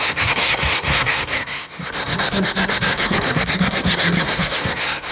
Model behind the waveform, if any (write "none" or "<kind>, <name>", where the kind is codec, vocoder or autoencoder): codec, SNAC